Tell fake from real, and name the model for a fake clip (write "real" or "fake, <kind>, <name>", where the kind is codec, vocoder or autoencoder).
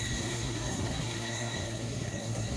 fake, codec, SNAC